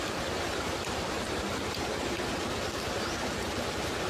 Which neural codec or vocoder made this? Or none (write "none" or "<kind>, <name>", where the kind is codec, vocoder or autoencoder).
none